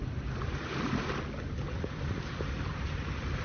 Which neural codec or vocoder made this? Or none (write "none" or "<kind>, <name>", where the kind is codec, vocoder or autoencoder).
none